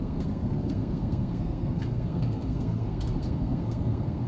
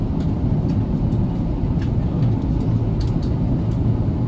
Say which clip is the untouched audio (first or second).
second